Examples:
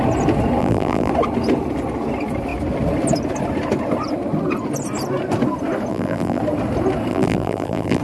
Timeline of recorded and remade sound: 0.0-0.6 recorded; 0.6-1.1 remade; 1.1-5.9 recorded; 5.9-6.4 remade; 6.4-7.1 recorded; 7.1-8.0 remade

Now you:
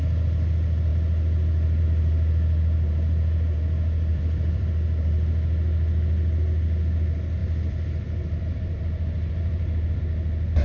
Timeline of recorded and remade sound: 0.0-4.1 recorded; 4.1-4.7 remade; 4.7-7.4 recorded; 7.4-10.0 remade; 10.0-10.6 recorded

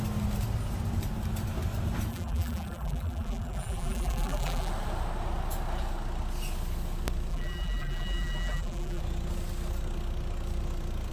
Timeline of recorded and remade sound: 0.0-2.1 recorded; 2.1-4.7 remade; 4.7-7.3 recorded; 7.3-9.0 remade; 9.0-11.1 recorded